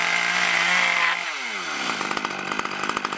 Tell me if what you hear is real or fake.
real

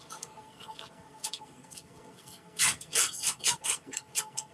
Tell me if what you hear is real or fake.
fake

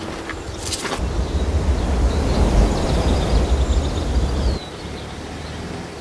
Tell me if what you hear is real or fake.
real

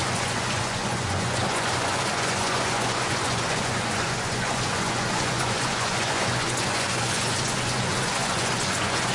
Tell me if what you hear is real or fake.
fake